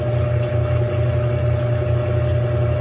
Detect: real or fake real